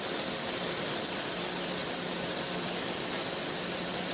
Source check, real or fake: real